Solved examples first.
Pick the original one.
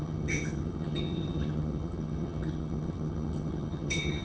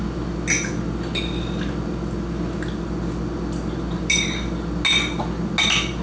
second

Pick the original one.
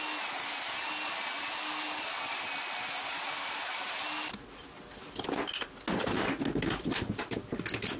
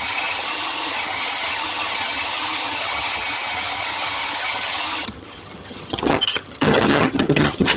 first